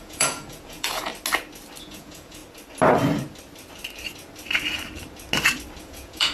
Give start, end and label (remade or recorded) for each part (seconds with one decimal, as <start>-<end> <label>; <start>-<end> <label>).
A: 0.0-1.1 remade; 1.1-1.8 recorded; 1.8-2.4 remade; 2.4-5.8 recorded; 5.8-6.3 remade